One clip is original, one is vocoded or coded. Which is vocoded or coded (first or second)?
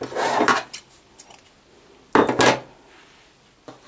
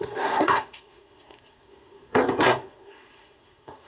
second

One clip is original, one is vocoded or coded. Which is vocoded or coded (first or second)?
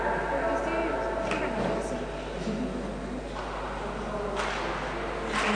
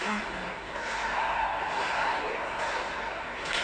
second